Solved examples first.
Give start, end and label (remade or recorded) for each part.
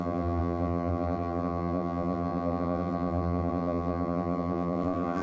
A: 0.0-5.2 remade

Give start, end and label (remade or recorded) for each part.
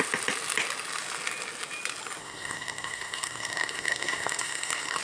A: 0.0-2.2 recorded; 2.2-5.0 remade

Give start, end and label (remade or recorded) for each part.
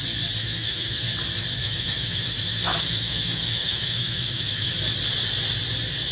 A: 0.0-0.4 recorded; 0.4-1.0 remade; 1.0-1.6 recorded; 1.6-4.7 remade; 4.7-6.1 recorded